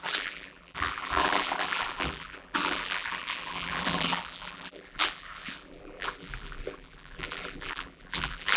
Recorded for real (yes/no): no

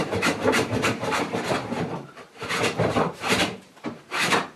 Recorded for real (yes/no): no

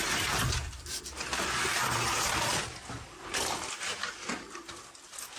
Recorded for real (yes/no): yes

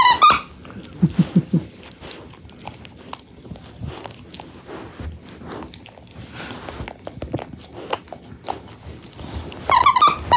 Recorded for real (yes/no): yes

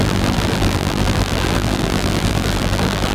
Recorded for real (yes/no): no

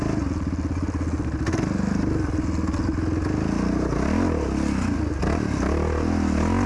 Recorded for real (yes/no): yes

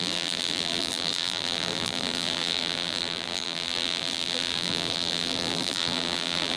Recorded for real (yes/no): no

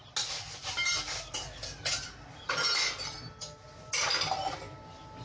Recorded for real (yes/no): yes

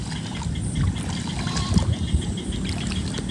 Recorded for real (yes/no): yes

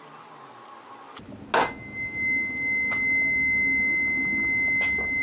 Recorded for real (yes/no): yes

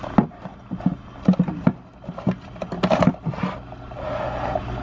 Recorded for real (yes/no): yes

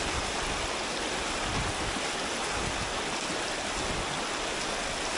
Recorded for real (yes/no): yes